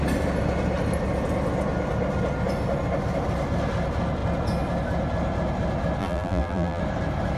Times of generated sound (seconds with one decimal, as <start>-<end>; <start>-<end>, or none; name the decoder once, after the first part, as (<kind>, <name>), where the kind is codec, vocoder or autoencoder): 6.0-6.8 (vocoder, BigVGAN v2)